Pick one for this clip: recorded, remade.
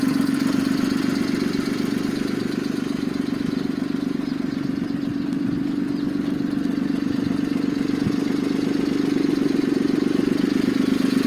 recorded